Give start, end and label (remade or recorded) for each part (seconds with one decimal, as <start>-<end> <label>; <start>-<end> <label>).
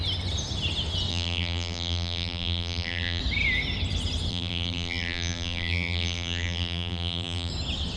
0.0-1.1 recorded; 1.1-3.2 remade; 3.2-4.3 recorded; 4.3-7.5 remade; 7.5-8.0 recorded